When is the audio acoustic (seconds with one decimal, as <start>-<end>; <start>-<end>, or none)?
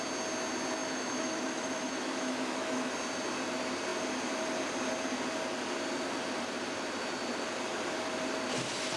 0.0-0.8; 2.9-9.0